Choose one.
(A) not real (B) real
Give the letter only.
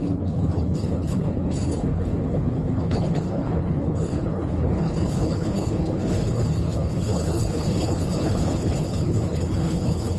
A